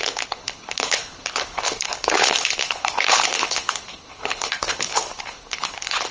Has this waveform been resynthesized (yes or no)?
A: yes